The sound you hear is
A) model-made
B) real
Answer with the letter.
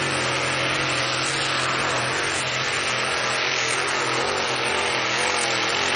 B